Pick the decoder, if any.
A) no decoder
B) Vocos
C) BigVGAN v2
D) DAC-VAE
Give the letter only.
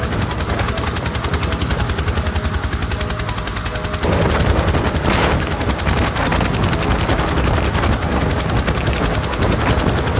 A